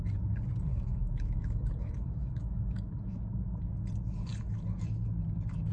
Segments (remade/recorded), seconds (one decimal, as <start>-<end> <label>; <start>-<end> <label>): 0.0-0.7 recorded; 0.7-3.2 remade; 3.2-5.7 recorded

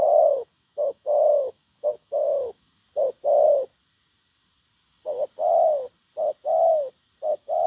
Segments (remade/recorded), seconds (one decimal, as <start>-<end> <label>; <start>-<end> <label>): 0.0-2.8 remade; 2.8-7.3 recorded; 7.3-7.7 remade

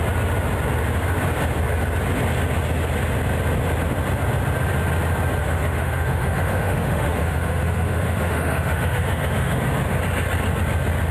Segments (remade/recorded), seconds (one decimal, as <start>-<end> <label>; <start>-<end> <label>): 0.0-5.4 recorded; 5.4-9.6 remade; 9.6-11.1 recorded

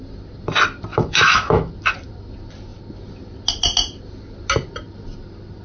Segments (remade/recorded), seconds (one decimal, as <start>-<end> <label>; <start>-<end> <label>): 0.0-0.9 recorded; 0.9-1.7 remade; 1.7-5.6 recorded

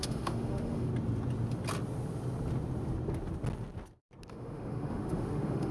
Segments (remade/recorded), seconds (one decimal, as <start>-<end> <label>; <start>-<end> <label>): 0.0-0.9 remade; 0.9-4.3 recorded; 4.3-5.7 remade

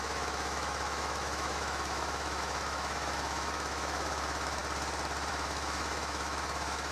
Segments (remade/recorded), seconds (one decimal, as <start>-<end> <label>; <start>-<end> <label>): 0.0-4.6 remade; 4.6-5.3 recorded; 5.3-6.9 remade